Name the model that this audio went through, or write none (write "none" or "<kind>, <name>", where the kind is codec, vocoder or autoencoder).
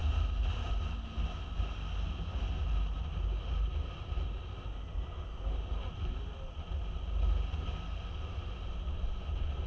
none